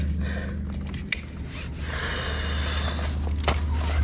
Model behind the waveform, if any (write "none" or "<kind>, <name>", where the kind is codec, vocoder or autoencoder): none